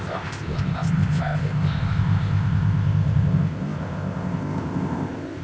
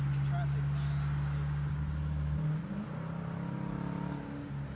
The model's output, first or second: first